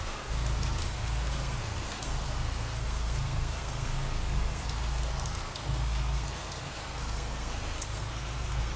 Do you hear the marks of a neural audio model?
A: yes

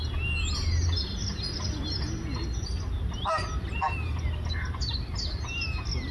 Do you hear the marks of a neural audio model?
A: no